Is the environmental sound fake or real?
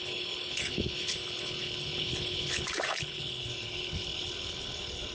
fake